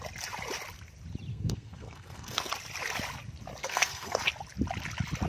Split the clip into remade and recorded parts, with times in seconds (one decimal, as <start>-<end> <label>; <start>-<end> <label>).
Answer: 0.0-1.3 recorded; 1.3-2.5 remade; 2.5-3.6 recorded; 3.6-4.2 remade; 4.2-5.3 recorded